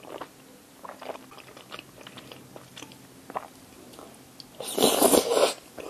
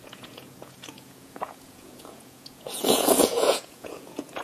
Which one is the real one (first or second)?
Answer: first